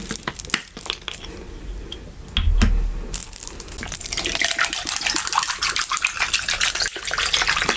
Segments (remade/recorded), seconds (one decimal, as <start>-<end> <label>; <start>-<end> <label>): 0.0-7.8 recorded